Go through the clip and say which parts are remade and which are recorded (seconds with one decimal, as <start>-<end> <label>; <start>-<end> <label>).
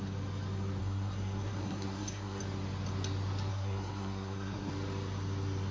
0.0-0.8 recorded; 0.8-2.4 remade; 2.4-3.5 recorded; 3.5-4.7 remade; 4.7-5.7 recorded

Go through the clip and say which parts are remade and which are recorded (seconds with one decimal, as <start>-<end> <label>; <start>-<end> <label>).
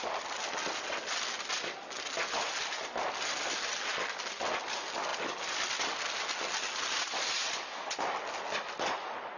0.0-9.4 recorded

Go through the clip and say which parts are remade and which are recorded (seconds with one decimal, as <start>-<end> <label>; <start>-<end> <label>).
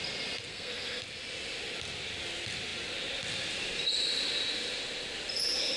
0.0-0.5 recorded; 0.5-1.0 remade; 1.0-5.8 recorded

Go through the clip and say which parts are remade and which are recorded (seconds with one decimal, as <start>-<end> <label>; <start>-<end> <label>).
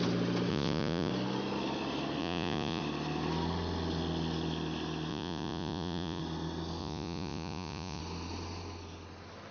0.0-0.5 recorded; 0.5-1.1 remade; 1.1-2.2 recorded; 2.2-2.8 remade; 2.8-5.1 recorded; 5.1-6.2 remade; 6.2-6.8 recorded; 6.8-8.0 remade; 8.0-9.5 recorded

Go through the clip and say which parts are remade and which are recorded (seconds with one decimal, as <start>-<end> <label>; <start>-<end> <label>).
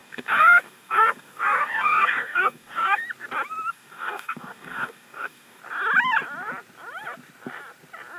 0.0-3.0 remade; 3.0-3.7 recorded; 3.7-5.6 remade; 5.6-8.2 recorded